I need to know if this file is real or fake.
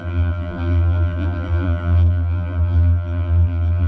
fake